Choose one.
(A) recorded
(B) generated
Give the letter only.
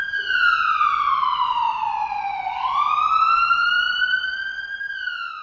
A